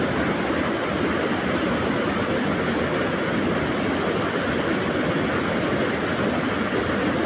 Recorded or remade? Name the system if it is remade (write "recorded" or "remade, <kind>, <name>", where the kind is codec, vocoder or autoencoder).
recorded